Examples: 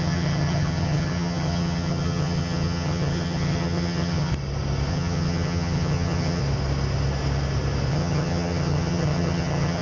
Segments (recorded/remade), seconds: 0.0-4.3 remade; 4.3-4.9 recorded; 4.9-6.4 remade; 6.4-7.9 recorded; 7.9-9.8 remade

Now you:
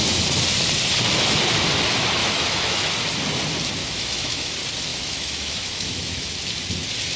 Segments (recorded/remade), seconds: 0.0-2.2 recorded; 2.2-2.9 remade; 2.9-3.8 recorded; 3.8-4.5 remade; 4.5-4.9 recorded; 4.9-6.3 remade; 6.3-7.2 recorded

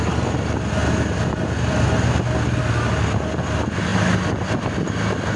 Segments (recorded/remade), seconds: 0.0-5.4 recorded

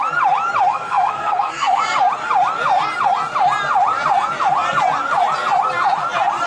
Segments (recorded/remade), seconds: 0.0-0.7 recorded; 0.7-1.8 remade; 1.8-6.5 recorded